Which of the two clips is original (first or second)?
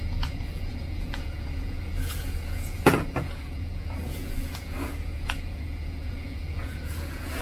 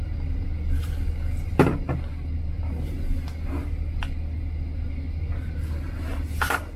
second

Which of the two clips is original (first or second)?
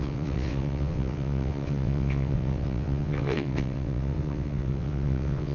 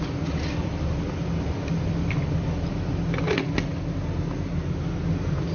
second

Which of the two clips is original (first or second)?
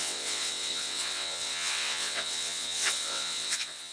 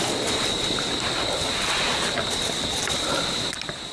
second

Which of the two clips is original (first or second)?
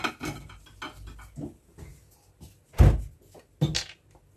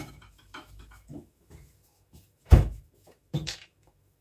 first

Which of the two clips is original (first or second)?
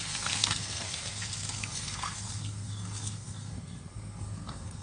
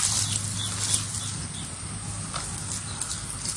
second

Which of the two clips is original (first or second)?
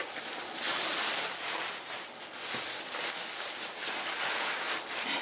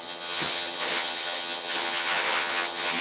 first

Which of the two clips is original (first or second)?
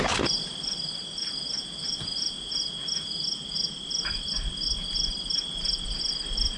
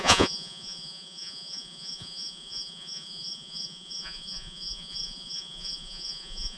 first